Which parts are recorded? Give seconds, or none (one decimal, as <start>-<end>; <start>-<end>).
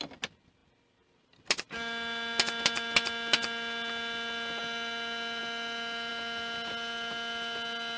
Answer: 0.0-8.0